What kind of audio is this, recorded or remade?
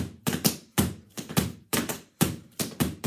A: remade